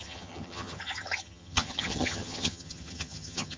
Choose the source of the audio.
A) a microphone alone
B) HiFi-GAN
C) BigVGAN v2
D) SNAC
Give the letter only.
B